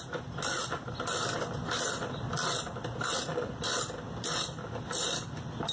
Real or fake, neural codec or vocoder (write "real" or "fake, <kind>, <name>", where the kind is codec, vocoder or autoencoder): real